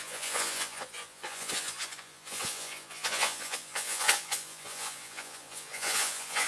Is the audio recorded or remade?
remade